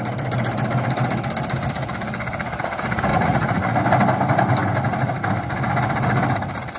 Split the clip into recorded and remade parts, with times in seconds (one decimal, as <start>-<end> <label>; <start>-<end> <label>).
0.0-3.1 recorded; 3.1-3.8 remade; 3.8-6.8 recorded